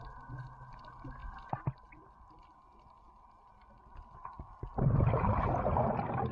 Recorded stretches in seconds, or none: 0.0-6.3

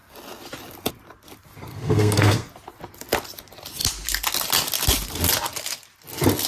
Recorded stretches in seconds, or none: 0.0-1.7; 2.5-6.5

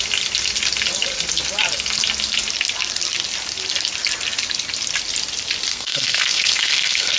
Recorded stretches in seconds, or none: 0.0-5.7